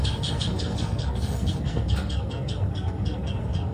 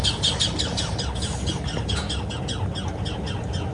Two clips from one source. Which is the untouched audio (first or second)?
second